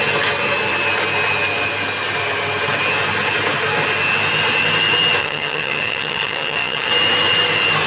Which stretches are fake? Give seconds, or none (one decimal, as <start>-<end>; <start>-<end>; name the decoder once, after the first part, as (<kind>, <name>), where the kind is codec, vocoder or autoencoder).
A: 5.2-6.9 (vocoder, HiFi-GAN)